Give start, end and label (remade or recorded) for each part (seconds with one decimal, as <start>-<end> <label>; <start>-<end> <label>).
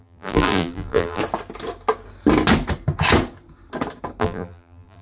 0.0-1.2 remade; 1.2-4.2 recorded; 4.2-5.0 remade